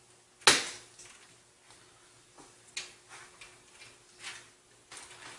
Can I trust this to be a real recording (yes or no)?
yes